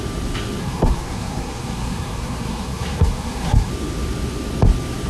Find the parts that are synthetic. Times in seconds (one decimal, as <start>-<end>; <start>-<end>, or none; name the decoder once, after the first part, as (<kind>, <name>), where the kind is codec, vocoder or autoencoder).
0.6-3.7 (codec, SNAC)